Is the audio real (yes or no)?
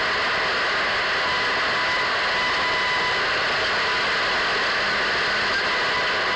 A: yes